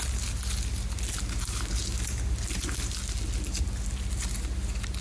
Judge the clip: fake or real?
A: real